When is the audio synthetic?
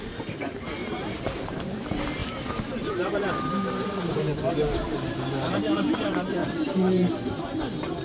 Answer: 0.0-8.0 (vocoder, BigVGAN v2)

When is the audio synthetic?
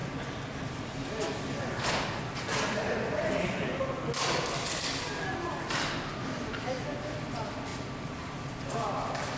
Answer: 7.7-8.5 (vocoder, BigVGAN v2)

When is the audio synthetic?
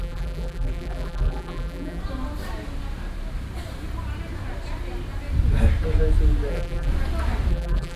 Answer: 0.0-2.0 (vocoder, BigVGAN v2); 6.5-6.9; 7.5-8.0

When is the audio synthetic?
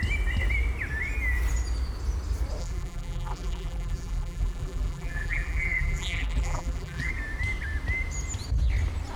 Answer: 2.6-7.1 (vocoder, BigVGAN v2)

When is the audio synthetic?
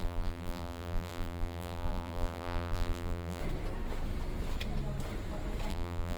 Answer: 0.0-3.4 (vocoder, BigVGAN v2); 5.7-6.2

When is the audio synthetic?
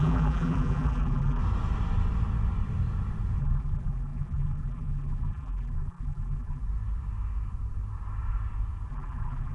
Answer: 0.0-1.4 (vocoder, BigVGAN v2); 3.4-6.6; 8.9-9.5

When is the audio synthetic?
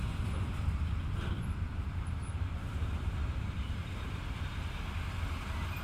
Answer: 1.7-4.1 (vocoder, BigVGAN v2)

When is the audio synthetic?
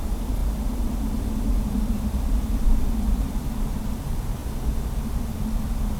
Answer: 0.0-0.4 (vocoder, BigVGAN v2); 1.7-4.4; 5.1-6.0